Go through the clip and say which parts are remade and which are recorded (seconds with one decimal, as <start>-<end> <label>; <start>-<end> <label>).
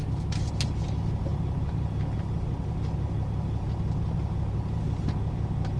0.0-5.8 recorded